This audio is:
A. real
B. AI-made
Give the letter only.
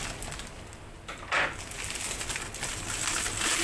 A